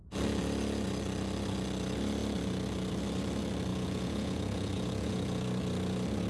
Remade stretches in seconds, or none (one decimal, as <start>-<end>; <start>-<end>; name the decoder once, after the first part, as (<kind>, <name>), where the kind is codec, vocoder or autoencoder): 3.7-5.4 (vocoder, Vocos)